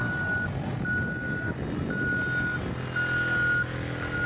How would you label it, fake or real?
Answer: real